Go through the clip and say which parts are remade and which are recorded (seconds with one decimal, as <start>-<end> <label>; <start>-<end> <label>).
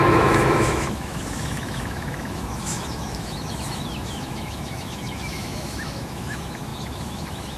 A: 0.0-7.6 remade